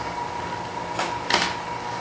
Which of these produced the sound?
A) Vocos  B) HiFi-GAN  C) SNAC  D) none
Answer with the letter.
D